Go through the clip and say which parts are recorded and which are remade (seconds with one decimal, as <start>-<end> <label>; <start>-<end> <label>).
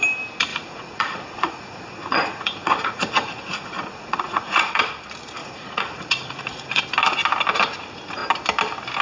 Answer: 0.0-0.5 recorded; 0.5-4.8 remade; 4.8-5.4 recorded; 5.4-6.8 remade; 6.8-9.0 recorded